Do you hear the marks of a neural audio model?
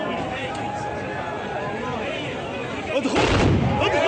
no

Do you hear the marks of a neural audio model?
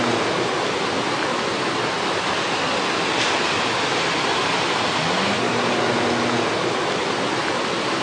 no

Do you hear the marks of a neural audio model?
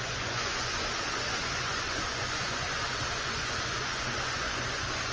yes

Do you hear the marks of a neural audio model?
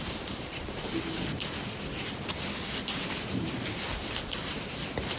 no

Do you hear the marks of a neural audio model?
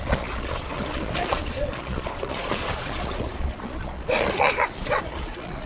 yes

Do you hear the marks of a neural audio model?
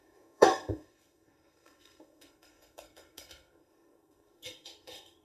yes